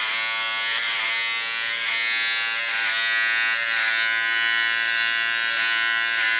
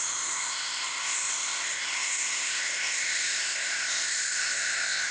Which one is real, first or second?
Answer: first